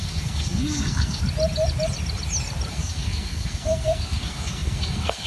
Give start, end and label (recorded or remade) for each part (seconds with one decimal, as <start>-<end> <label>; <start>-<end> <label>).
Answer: 0.0-1.2 remade; 1.2-2.7 recorded; 2.7-5.3 remade